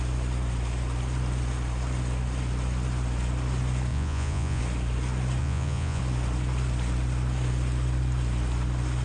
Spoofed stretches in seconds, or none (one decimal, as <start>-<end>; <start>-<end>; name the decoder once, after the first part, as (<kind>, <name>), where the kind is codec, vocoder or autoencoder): 3.9-4.6 (vocoder, Vocos); 5.4-6.0